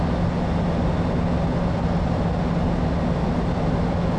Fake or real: real